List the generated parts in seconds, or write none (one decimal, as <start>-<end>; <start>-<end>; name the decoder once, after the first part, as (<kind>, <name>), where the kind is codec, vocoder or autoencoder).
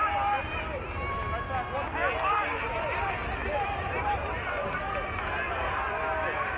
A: 3.4-4.8 (vocoder, BigVGAN v2)